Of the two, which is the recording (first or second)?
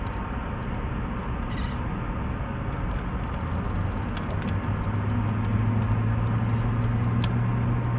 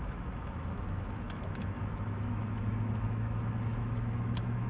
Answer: first